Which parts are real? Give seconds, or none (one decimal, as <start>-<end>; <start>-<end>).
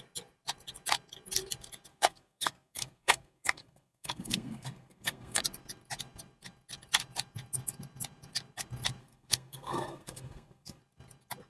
0.0-1.9; 5.4-9.0; 10.8-11.5